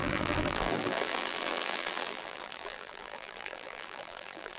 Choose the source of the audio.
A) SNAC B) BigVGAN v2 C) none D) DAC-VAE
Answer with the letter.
B